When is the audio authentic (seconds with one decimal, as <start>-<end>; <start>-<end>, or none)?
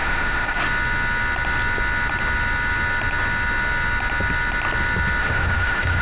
0.6-5.2